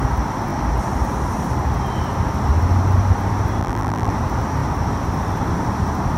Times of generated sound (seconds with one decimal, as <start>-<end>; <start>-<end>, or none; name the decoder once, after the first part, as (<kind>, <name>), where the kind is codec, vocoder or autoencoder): 3.6-4.1 (vocoder, BigVGAN v2)